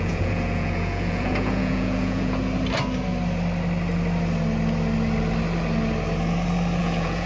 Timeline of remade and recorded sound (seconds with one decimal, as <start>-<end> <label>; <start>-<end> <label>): 0.0-2.4 remade; 2.4-6.8 recorded; 6.8-7.3 remade